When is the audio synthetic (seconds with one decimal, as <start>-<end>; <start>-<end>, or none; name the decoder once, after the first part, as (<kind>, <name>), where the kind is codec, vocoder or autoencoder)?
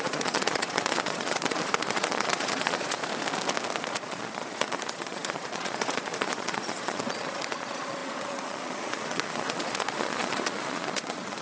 0.0-3.0 (vocoder, Vocos); 3.9-11.4